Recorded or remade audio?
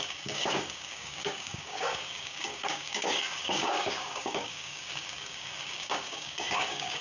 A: remade